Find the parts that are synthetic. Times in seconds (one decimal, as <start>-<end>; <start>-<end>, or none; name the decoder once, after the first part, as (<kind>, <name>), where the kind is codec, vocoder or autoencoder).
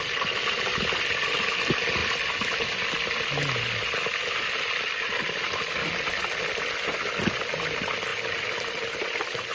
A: none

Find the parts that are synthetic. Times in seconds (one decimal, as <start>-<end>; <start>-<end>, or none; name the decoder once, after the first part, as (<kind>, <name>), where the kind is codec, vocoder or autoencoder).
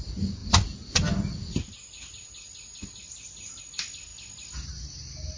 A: none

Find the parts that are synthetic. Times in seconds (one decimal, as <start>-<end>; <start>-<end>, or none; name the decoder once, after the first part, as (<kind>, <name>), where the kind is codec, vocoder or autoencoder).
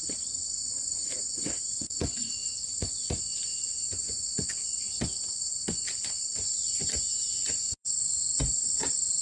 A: 0.6-3.1 (vocoder, Vocos); 3.5-5.0; 6.3-9.2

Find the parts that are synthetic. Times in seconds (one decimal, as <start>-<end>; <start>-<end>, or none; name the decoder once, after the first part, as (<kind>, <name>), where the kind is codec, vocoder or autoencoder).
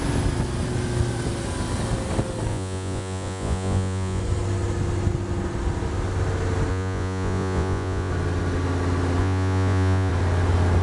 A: 2.5-4.2 (vocoder, Vocos); 6.7-8.1; 9.2-10.1